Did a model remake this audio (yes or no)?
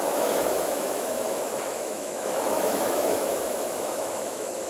yes